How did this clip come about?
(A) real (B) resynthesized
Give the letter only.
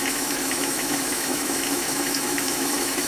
B